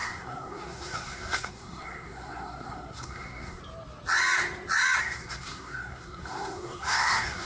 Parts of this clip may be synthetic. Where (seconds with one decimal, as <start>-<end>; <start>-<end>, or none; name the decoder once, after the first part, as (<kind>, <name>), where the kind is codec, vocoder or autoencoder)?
0.0-3.6 (codec, SNAC); 5.0-7.5